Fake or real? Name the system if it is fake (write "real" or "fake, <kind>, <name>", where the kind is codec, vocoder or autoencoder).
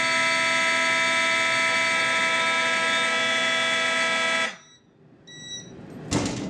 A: real